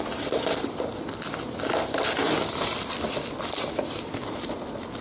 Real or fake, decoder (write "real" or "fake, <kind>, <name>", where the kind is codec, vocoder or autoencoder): fake, vocoder, BigVGAN v2